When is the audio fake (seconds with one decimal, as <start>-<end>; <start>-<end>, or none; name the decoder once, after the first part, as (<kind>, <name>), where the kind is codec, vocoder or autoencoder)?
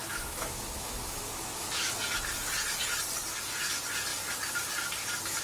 0.0-1.9 (autoencoder, DAC-VAE)